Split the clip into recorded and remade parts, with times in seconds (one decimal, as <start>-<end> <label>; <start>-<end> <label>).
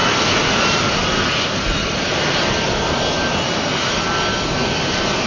0.0-5.3 recorded